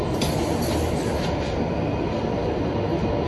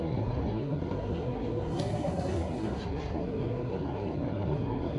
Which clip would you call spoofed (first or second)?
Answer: second